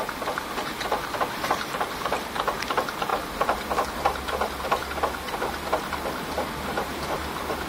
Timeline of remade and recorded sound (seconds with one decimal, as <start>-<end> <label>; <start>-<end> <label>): 0.0-7.7 recorded